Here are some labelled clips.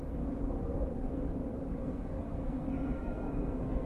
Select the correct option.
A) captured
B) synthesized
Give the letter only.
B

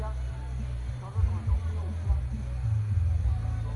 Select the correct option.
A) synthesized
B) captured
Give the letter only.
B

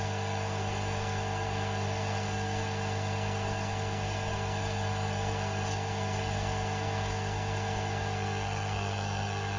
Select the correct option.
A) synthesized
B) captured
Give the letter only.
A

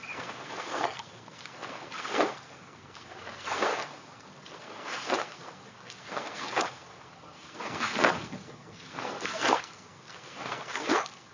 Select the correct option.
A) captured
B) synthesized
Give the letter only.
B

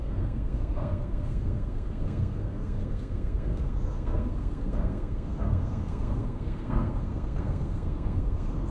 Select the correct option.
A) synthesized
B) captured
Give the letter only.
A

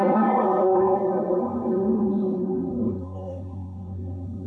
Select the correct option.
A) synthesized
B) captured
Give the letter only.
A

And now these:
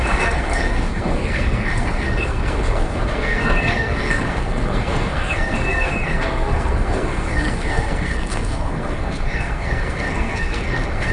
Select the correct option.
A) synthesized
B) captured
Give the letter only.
A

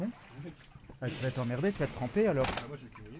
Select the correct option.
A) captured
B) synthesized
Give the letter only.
A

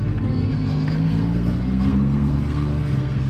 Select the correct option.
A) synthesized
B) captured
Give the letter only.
A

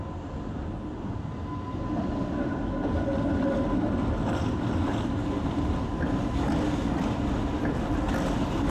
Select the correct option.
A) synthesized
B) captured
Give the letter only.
B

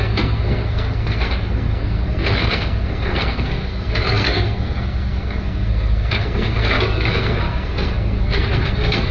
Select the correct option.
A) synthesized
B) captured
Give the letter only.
A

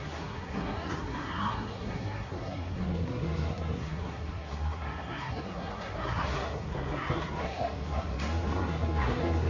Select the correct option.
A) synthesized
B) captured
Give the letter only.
A